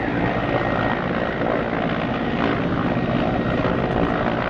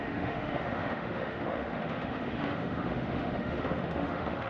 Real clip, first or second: first